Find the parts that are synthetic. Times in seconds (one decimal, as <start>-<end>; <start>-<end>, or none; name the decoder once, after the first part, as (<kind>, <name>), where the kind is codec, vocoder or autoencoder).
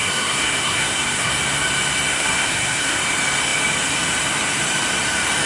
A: 0.0-1.3 (codec, SNAC); 2.1-3.0